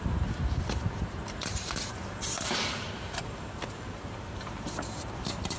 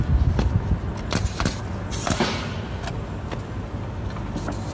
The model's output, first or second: first